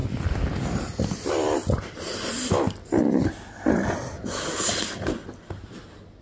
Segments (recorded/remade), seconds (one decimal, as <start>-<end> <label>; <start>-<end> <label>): 0.0-6.2 recorded